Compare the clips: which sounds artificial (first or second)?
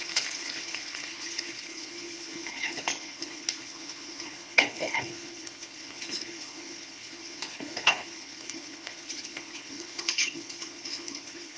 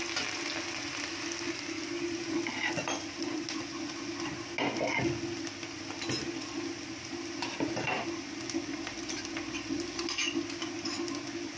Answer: first